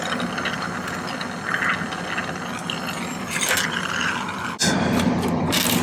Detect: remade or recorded recorded